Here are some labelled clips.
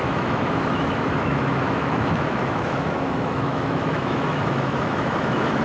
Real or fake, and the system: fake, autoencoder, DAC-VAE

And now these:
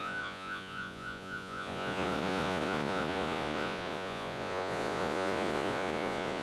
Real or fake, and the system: fake, vocoder, Vocos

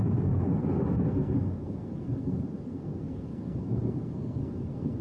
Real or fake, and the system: fake, codec, SNAC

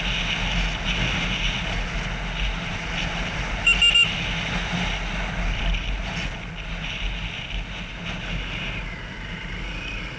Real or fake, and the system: real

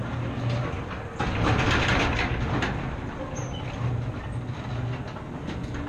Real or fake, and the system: real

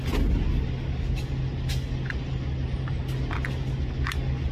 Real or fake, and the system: real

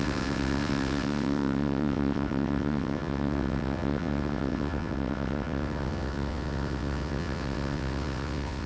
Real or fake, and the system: fake, vocoder, WaveNeXt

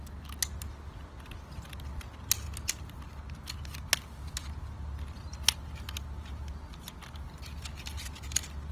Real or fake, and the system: real